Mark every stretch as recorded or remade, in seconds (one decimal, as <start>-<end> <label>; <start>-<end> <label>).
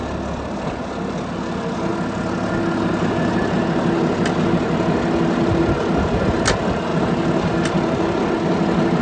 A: 0.0-9.0 recorded